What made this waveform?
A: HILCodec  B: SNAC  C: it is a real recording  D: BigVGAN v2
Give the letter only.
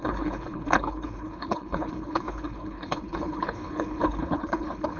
A